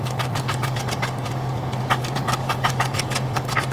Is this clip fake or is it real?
fake